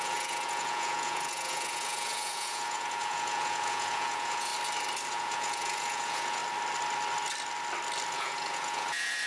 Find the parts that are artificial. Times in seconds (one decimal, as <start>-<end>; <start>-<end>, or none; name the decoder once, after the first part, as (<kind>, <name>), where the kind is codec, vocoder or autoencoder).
0.0-4.5 (vocoder, Vocos); 5.1-6.4; 8.1-9.3